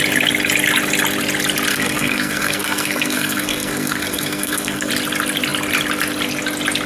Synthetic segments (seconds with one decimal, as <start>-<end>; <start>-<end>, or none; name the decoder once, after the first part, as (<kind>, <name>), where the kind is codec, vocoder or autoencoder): 1.7-4.9 (codec, SNAC)